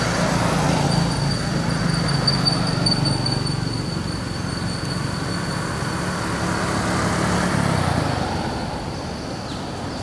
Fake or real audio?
real